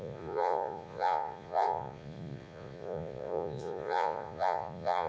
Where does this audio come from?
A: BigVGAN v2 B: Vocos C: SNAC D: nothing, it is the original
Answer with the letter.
B